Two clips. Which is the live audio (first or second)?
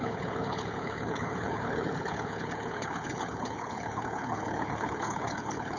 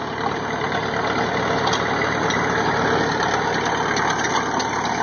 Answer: second